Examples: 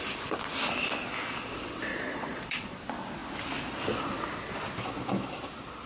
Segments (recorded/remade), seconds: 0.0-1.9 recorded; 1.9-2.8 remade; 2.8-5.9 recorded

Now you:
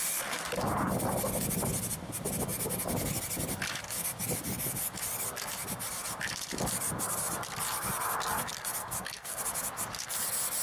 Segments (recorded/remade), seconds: 0.0-8.8 recorded; 8.8-9.4 remade; 9.4-10.6 recorded

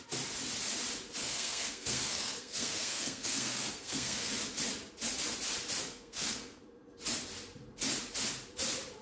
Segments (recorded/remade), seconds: 0.0-1.2 recorded; 1.2-4.3 remade; 4.3-5.8 recorded; 5.8-6.6 remade; 6.6-9.0 recorded

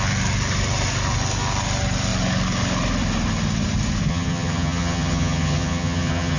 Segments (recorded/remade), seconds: 0.0-4.1 recorded; 4.1-6.4 remade

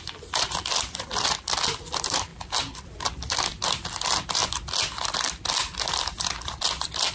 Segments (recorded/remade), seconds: 0.0-4.4 remade; 4.4-7.1 recorded

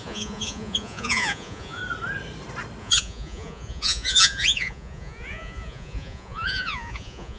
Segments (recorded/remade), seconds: 0.0-1.8 remade; 1.8-2.8 recorded; 2.8-7.4 remade